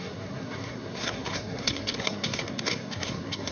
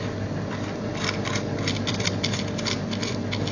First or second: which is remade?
first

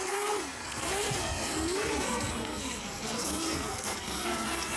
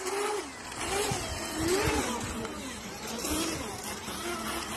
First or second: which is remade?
first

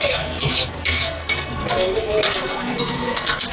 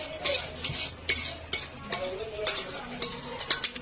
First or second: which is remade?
first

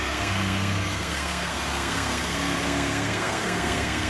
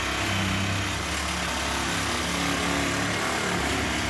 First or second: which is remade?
first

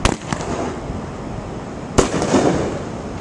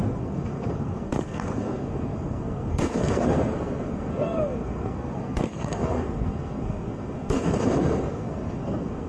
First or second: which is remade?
second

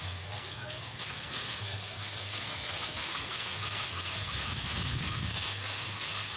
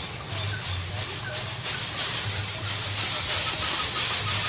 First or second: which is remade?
first